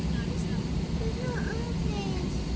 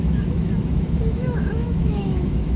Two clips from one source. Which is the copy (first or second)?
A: second